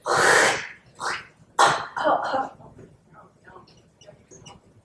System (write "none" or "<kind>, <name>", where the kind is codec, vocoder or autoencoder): none